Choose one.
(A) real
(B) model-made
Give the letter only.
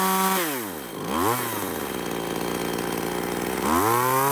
A